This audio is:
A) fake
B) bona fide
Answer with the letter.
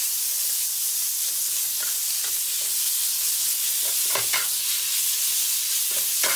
B